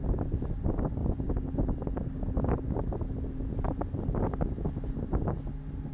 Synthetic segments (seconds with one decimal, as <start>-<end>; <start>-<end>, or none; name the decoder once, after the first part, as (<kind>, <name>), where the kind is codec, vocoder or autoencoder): none